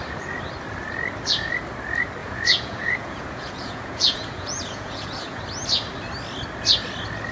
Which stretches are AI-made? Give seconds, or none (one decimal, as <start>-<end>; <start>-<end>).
2.2-5.4